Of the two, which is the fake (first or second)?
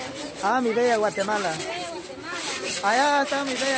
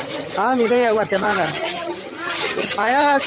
second